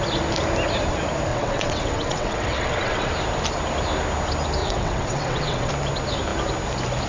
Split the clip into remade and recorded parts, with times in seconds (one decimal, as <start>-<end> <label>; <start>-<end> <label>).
0.0-1.3 recorded; 1.3-3.1 remade; 3.1-4.6 recorded; 4.6-5.7 remade; 5.7-7.1 recorded